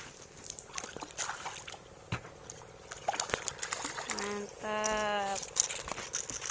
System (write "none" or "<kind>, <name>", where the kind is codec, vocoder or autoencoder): none